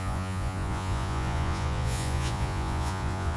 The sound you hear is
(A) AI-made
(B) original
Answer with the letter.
A